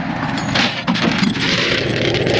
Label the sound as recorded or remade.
recorded